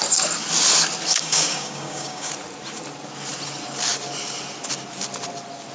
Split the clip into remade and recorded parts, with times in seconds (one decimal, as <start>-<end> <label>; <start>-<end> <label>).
0.0-1.1 recorded; 1.1-2.3 remade; 2.3-5.7 recorded

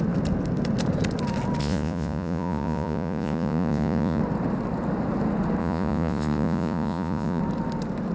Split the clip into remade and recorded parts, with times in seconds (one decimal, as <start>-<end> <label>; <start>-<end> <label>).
0.0-1.6 recorded; 1.6-4.2 remade; 4.2-5.6 recorded; 5.6-7.4 remade; 7.4-8.1 recorded

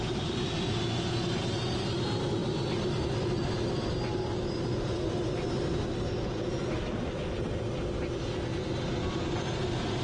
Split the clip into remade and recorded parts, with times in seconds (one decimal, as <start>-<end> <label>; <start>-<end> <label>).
0.0-10.0 recorded

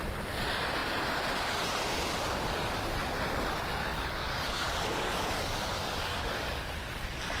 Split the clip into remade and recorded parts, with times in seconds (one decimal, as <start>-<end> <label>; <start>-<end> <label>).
0.0-3.8 recorded; 3.8-6.6 remade; 6.6-7.4 recorded